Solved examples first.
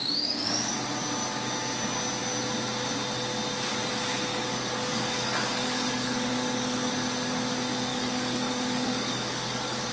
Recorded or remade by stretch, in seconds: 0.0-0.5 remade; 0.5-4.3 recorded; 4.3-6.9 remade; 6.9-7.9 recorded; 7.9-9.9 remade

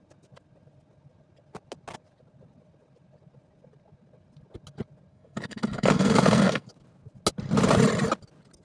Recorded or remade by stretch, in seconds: 0.0-5.1 recorded; 5.1-6.7 remade; 6.7-8.6 recorded

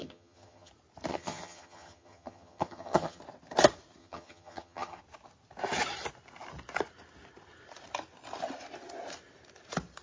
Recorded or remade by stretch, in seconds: 0.0-0.7 remade; 0.7-1.1 recorded; 1.1-3.2 remade; 3.2-4.0 recorded; 4.0-5.0 remade; 5.0-10.0 recorded